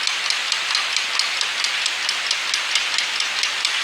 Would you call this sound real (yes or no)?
yes